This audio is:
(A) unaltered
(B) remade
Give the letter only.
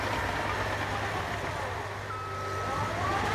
A